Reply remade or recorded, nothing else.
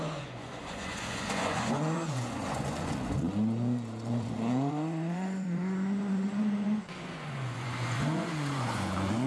remade